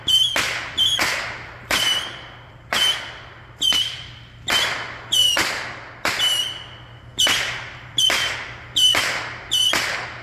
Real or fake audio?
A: real